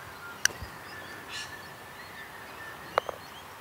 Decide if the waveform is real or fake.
real